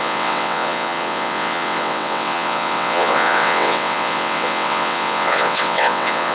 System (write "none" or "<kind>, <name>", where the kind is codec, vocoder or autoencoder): vocoder, WaveNeXt